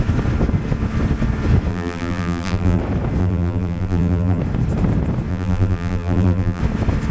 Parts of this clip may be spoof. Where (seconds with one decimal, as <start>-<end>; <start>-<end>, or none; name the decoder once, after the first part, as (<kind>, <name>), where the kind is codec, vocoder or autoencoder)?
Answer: 1.7-2.8 (vocoder, BigVGAN v2); 3.2-4.4; 5.3-6.6